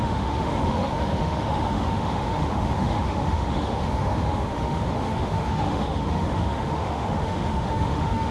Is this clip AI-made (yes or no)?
yes